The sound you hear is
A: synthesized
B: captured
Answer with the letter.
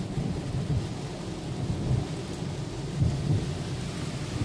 B